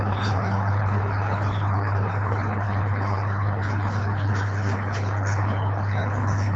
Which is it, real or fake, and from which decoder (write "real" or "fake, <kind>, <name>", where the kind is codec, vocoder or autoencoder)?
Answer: fake, codec, HILCodec